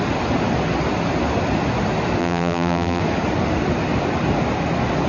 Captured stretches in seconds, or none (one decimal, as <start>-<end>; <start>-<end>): 0.0-2.2; 3.0-5.1